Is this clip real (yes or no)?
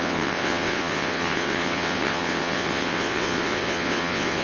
no